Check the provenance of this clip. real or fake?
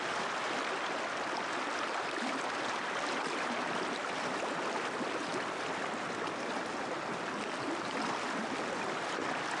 real